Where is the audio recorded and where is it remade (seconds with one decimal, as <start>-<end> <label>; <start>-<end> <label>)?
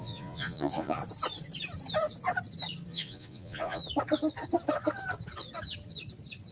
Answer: 0.0-1.0 remade; 1.0-2.9 recorded; 2.9-3.8 remade; 3.8-6.5 recorded